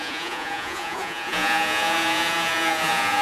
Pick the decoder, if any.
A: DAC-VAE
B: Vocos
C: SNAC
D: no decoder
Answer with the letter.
B